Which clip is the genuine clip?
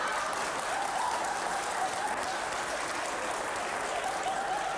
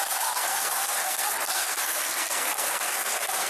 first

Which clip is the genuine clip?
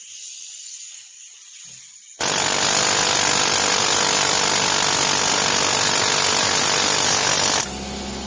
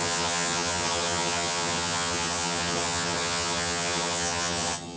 first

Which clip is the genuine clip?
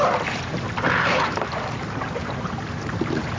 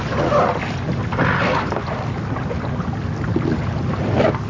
second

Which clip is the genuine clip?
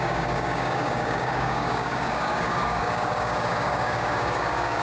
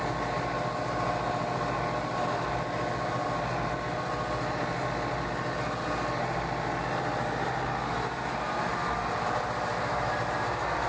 second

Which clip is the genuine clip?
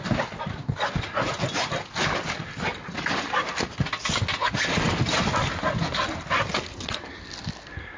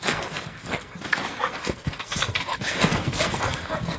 first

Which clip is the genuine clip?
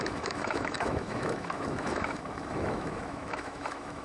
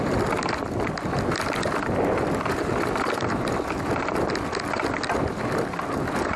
second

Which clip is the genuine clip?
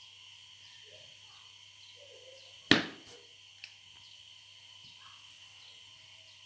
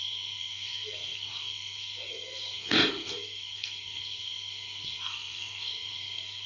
first